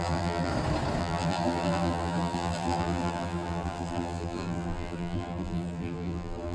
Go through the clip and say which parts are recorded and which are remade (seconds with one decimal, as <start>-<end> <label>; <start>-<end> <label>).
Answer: 0.0-0.5 remade; 0.5-1.0 recorded; 1.0-6.5 remade